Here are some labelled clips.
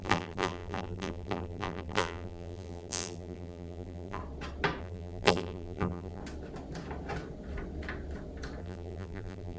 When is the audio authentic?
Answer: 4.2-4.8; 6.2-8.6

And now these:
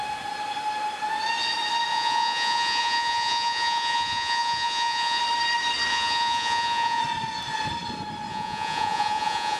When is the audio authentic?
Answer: 0.0-1.9; 5.2-5.9; 7.0-8.3

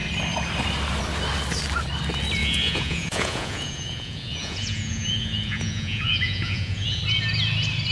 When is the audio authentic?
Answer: 0.0-2.4; 7.0-7.9

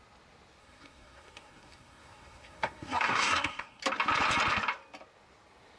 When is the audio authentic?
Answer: 0.0-0.6; 3.8-5.8

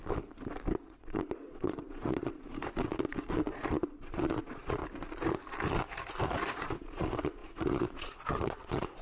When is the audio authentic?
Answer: 0.0-0.7; 4.8-6.5

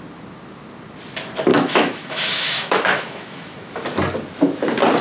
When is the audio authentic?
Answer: 0.0-1.5; 3.7-5.0